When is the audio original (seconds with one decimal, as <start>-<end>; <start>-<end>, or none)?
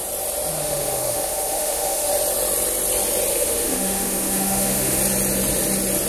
0.0-0.6; 2.1-3.3; 5.0-6.1